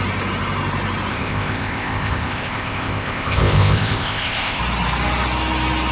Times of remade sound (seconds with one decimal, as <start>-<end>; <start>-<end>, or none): 1.1-4.6